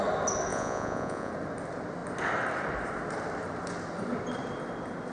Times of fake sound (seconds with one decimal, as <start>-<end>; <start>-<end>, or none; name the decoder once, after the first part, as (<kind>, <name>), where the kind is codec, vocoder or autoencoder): 0.5-1.3 (vocoder, Vocos)